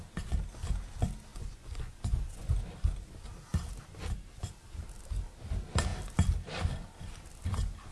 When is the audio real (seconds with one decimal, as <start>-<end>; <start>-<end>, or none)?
0.0-1.3; 2.6-7.9